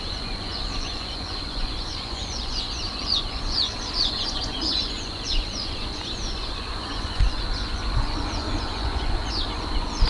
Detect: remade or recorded remade